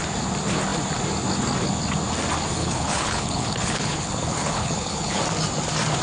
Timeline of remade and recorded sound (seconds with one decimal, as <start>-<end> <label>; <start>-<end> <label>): 0.0-2.6 recorded; 2.6-5.2 remade; 5.2-6.0 recorded